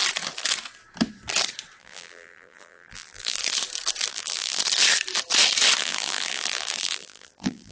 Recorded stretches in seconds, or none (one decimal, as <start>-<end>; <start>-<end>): 0.0-1.8; 3.4-4.1; 4.6-5.8